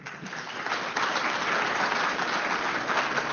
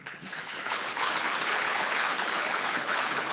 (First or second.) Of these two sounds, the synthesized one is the second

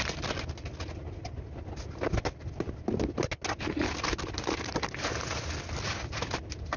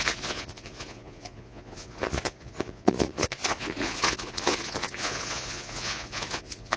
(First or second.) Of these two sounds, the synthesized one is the second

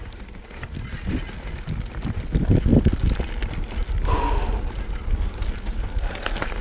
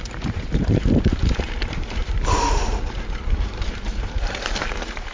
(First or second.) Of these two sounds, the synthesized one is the second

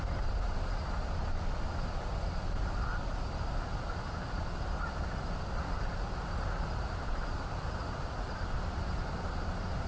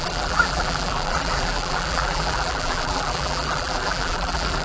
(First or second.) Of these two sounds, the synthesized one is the second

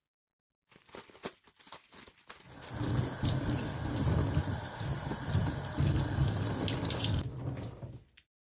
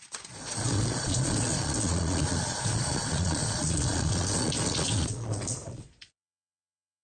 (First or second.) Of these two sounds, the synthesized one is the second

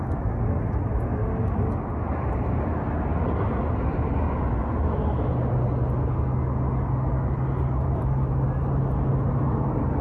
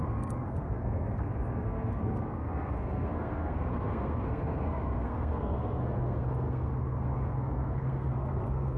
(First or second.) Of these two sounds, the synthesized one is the second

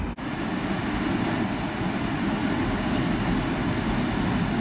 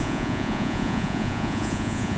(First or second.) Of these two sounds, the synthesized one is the second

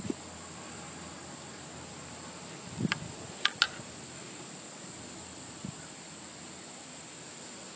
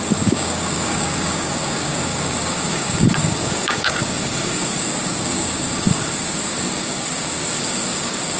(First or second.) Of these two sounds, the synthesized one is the second